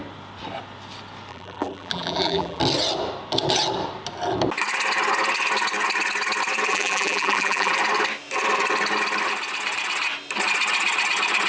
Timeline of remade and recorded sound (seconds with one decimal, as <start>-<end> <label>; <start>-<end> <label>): 0.0-1.3 recorded; 1.3-2.6 remade; 2.6-6.7 recorded; 6.7-7.7 remade; 7.7-11.5 recorded